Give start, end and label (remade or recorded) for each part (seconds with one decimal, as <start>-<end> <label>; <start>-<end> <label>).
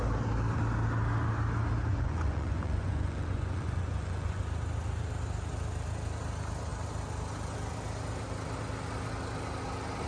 0.0-1.9 recorded; 1.9-4.4 remade; 4.4-10.1 recorded